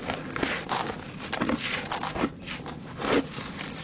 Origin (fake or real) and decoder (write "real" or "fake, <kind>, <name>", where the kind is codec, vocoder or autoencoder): real